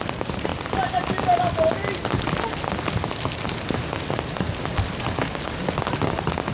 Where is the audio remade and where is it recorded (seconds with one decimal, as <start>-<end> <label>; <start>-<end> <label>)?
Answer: 0.0-6.5 recorded